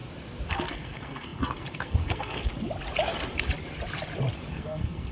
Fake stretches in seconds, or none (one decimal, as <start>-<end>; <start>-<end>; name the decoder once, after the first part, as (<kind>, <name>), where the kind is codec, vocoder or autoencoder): 0.5-2.5 (codec, SNAC); 4.5-5.1